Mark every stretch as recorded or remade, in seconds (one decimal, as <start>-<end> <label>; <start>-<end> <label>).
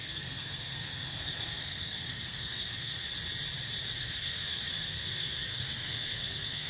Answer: 0.0-3.0 remade; 3.0-4.0 recorded; 4.0-6.7 remade